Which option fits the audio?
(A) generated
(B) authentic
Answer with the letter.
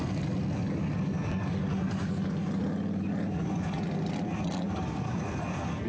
B